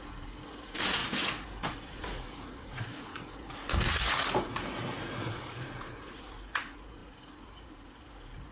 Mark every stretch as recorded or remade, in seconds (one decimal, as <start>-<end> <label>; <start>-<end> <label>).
0.0-8.5 remade